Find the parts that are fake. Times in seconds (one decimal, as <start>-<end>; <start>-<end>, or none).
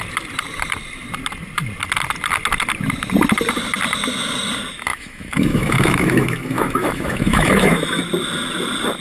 4.9-8.0